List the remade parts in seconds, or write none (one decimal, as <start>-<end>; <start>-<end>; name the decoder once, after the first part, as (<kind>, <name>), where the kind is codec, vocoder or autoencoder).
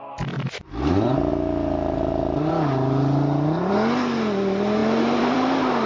4.8-5.5 (vocoder, BigVGAN v2)